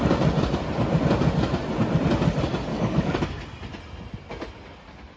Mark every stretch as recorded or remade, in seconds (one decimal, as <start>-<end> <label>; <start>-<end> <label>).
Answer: 0.0-2.7 recorded; 2.7-3.2 remade; 3.2-5.2 recorded